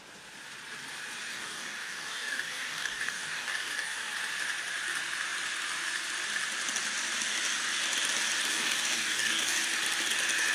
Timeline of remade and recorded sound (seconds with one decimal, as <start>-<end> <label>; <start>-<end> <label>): 0.0-1.3 recorded; 1.3-4.1 remade; 4.1-8.5 recorded; 8.5-9.6 remade; 9.6-10.5 recorded